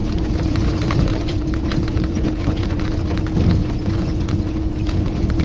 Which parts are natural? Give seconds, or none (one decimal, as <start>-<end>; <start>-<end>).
3.2-3.6